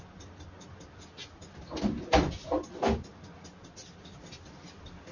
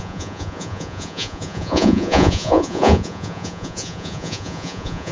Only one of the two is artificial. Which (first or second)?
second